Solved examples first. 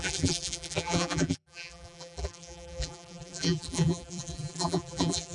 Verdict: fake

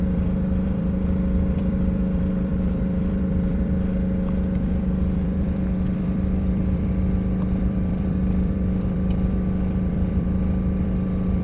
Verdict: fake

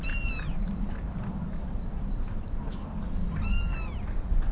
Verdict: real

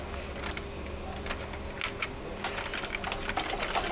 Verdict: real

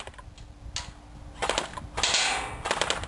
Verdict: real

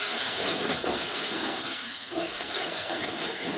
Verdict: fake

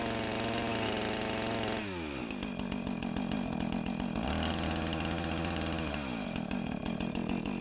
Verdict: real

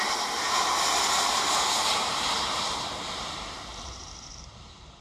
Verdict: fake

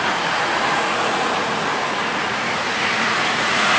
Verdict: fake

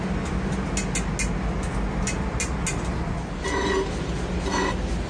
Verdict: real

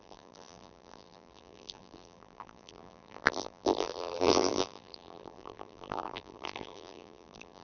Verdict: fake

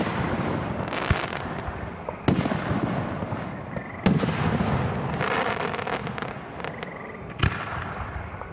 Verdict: real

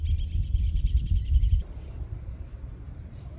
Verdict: real